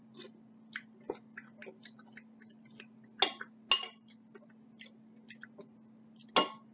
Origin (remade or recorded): recorded